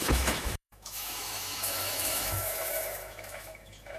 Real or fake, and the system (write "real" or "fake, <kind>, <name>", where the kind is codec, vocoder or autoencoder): fake, autoencoder, DAC-VAE